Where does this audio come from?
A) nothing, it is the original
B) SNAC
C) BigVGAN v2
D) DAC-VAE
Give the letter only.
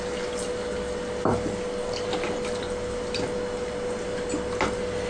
A